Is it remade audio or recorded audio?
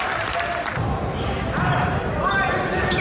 recorded